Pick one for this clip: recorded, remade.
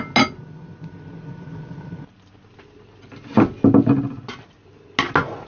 recorded